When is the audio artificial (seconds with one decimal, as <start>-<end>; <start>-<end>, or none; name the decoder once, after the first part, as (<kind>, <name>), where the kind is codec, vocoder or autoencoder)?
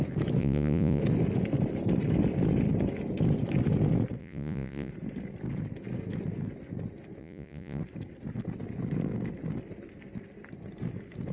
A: 0.4-1.0 (vocoder, Vocos); 4.2-4.9; 7.2-7.8